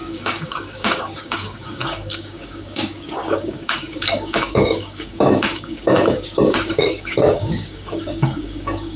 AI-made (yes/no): yes